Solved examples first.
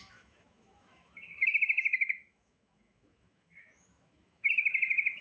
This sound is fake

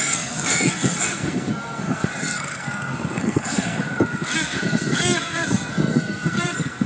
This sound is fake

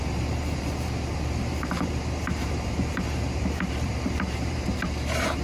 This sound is fake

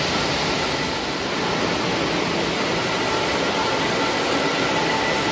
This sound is real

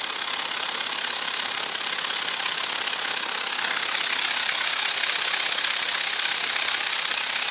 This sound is real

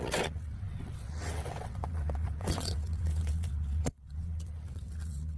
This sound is fake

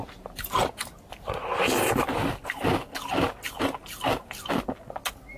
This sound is real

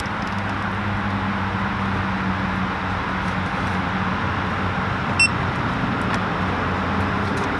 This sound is real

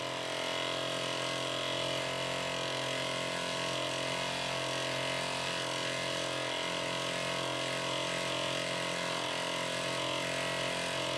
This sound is real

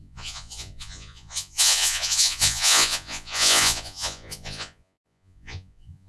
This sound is fake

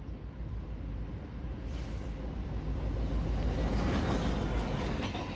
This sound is real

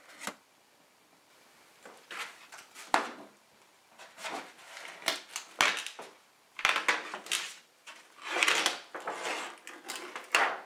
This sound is real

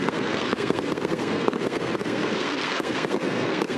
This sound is fake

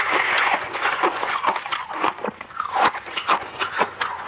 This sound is fake